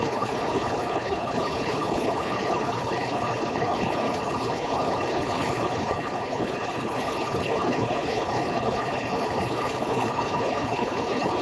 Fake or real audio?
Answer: fake